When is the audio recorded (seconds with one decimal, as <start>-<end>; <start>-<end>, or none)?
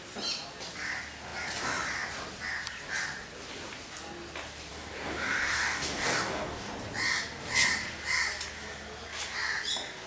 0.0-4.7; 6.7-10.1